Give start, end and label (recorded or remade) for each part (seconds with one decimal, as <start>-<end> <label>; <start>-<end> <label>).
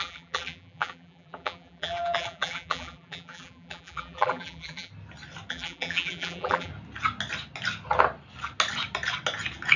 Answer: 0.0-4.9 remade; 4.9-5.5 recorded; 5.5-6.7 remade; 6.7-9.8 recorded